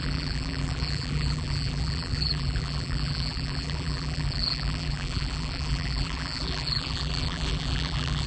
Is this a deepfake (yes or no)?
yes